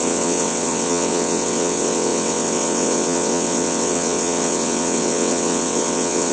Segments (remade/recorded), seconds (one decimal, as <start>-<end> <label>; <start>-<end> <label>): 0.0-6.3 remade